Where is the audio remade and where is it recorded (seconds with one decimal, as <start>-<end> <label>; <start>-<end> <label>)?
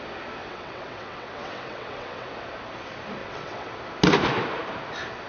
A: 0.0-0.4 recorded; 0.4-2.3 remade; 2.3-3.2 recorded; 3.2-3.7 remade; 3.7-5.3 recorded